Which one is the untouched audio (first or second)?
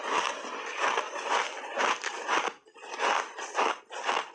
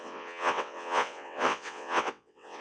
first